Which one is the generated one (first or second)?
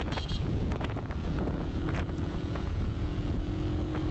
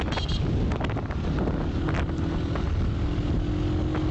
first